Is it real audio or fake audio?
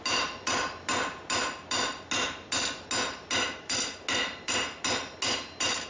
real